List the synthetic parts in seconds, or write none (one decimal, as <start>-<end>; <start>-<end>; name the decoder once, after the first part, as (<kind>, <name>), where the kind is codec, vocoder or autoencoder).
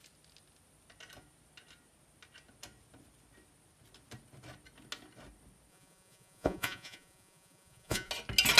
5.7-8.1 (vocoder, Vocos)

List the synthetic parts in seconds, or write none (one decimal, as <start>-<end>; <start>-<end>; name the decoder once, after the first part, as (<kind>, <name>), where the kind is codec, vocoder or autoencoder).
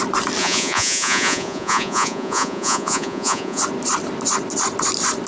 0.4-3.6 (vocoder, Vocos)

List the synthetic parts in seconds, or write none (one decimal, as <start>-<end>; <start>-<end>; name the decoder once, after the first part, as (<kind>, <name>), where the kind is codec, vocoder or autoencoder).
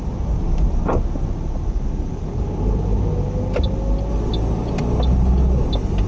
none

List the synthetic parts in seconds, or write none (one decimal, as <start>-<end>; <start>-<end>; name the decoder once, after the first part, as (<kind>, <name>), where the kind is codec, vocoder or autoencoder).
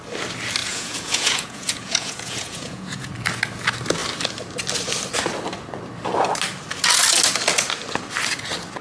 0.6-3.1 (vocoder, Vocos)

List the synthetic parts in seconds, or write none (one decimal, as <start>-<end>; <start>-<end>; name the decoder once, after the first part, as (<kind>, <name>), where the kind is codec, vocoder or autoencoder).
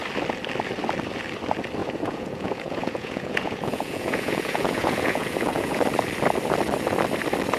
1.8-5.8 (vocoder, Vocos)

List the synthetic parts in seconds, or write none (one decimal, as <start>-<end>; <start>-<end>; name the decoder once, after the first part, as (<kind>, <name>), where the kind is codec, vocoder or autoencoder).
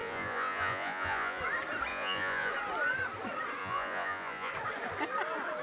0.0-1.4 (vocoder, Vocos); 1.9-2.5; 3.6-4.5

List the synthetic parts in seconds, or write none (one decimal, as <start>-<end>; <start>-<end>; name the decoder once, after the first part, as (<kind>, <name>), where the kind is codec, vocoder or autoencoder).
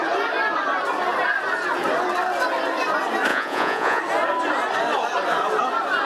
3.3-4.0 (vocoder, Vocos)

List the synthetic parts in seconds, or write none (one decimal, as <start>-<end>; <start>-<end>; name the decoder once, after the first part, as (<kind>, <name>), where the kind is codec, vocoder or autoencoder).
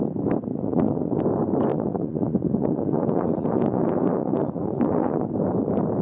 0.5-1.2 (vocoder, Vocos); 1.7-5.3